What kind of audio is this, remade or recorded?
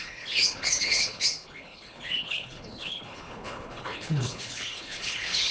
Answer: remade